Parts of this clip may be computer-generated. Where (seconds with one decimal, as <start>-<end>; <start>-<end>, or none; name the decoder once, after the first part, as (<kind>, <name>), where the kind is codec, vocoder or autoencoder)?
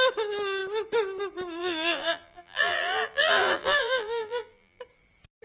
1.6-4.8 (vocoder, BigVGAN v2)